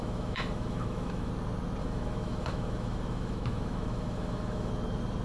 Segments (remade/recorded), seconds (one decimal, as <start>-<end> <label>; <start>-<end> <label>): 0.0-1.3 remade; 1.3-1.8 recorded; 1.8-4.7 remade; 4.7-5.2 recorded